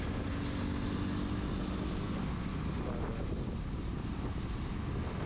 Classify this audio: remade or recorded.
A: recorded